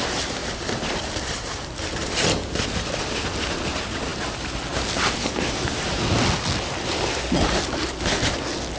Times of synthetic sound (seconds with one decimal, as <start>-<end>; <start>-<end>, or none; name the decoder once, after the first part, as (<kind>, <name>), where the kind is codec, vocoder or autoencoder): 0.4-3.0 (vocoder, BigVGAN v2)